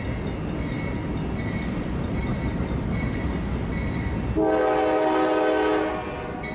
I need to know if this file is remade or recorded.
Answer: recorded